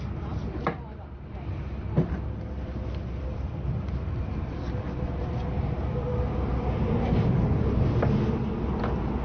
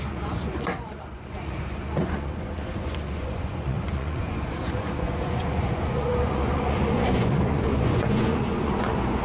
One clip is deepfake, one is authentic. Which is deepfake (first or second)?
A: second